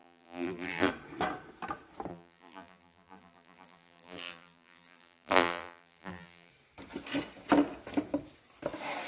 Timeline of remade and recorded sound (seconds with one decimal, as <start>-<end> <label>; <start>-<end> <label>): 0.0-0.9 remade; 0.9-2.1 recorded; 2.1-6.5 remade; 6.5-9.1 recorded